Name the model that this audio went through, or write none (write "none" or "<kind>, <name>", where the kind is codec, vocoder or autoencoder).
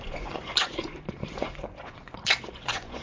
vocoder, Vocos